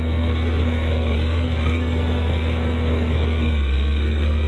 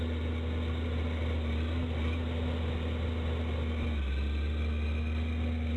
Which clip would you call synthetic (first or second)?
first